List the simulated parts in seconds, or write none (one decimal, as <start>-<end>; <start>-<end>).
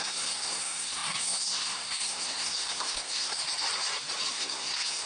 0.0-3.4; 4.3-5.1